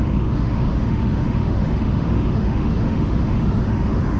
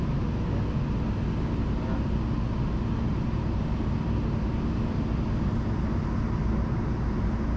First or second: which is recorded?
second